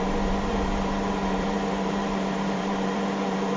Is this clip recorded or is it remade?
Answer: remade